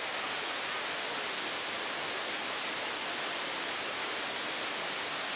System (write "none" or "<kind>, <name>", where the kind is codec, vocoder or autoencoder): none